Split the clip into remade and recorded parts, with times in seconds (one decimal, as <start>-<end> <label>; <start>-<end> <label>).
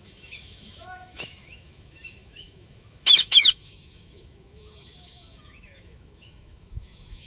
0.0-7.3 remade